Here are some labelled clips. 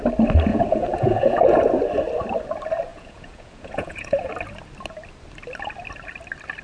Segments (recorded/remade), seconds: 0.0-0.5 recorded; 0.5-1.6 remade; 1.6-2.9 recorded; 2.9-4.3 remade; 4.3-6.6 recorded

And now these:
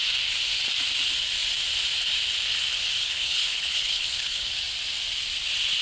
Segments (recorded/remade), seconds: 0.0-3.0 recorded; 3.0-4.5 remade; 4.5-5.8 recorded

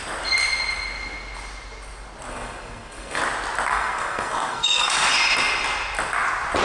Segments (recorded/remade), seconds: 0.0-2.3 recorded; 2.3-3.2 remade; 3.2-3.7 recorded; 3.7-4.9 remade; 4.9-6.6 recorded

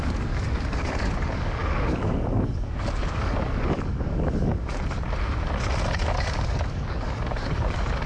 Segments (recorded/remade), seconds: 0.0-4.7 remade; 4.7-6.0 recorded; 6.0-8.1 remade

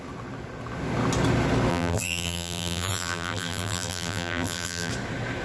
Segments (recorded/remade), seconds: 0.0-1.7 recorded; 1.7-4.9 remade; 4.9-5.4 recorded